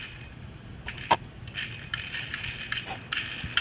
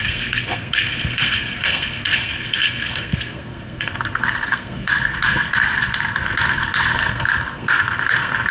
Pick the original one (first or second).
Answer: first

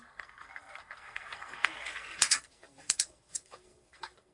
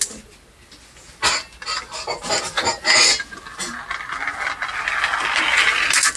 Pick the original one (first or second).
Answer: second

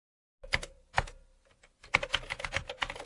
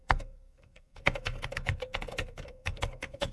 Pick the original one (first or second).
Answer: first